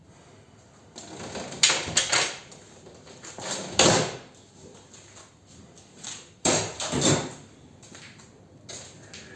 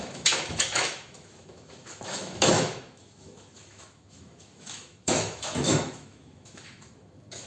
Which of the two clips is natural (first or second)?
first